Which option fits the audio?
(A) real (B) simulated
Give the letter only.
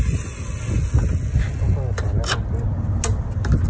A